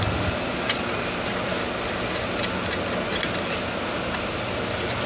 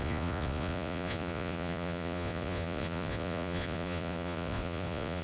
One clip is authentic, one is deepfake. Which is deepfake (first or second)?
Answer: second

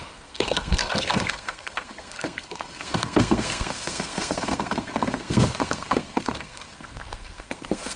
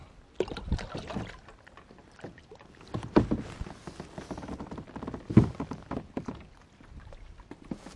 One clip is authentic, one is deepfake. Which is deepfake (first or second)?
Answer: first